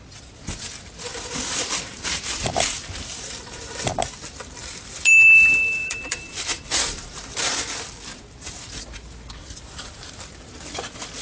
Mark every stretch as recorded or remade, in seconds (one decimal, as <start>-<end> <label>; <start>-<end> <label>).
0.0-1.1 recorded; 1.1-3.6 remade; 3.6-5.8 recorded; 5.8-7.4 remade; 7.4-9.4 recorded; 9.4-10.1 remade; 10.1-11.2 recorded